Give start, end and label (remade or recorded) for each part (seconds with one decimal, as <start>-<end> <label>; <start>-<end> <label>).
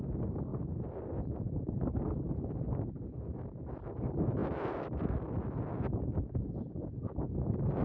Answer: 0.0-0.5 recorded; 0.5-2.5 remade; 2.5-7.8 recorded